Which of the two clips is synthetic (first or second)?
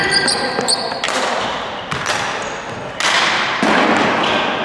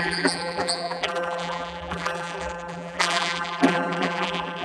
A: second